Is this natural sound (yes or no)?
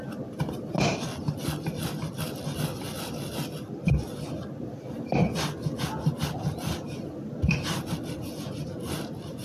yes